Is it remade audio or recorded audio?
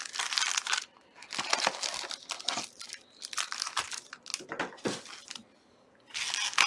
recorded